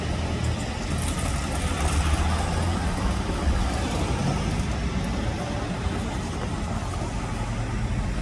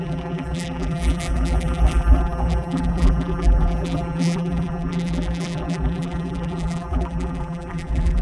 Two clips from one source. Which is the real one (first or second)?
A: first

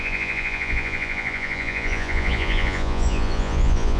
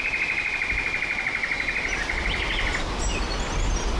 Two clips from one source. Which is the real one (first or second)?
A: second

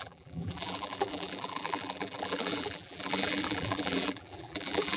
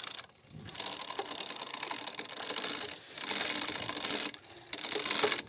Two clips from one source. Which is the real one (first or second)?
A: second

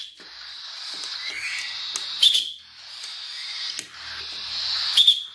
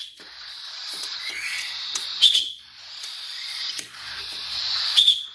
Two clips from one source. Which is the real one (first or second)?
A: first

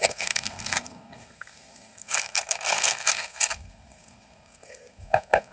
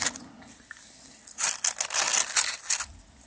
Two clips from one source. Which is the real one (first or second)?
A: second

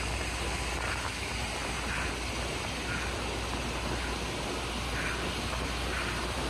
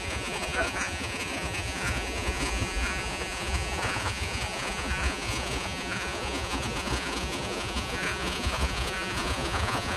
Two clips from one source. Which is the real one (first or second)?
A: first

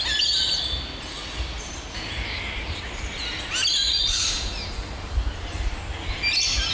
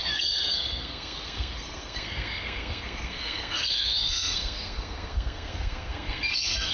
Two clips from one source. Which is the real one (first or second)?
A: first